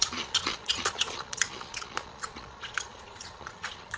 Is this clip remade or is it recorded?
remade